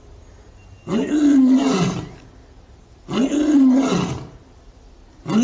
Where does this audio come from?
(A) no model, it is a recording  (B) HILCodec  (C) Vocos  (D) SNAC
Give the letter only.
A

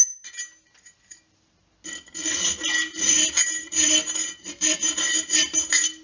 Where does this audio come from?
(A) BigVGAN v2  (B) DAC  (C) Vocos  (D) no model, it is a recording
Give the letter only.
D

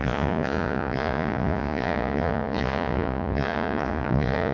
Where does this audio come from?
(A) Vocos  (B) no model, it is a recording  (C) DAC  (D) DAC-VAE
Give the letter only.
A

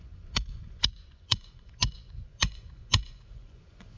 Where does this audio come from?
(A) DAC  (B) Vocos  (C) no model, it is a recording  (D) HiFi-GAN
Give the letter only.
B